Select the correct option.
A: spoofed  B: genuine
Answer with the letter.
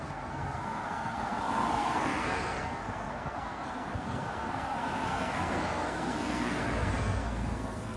A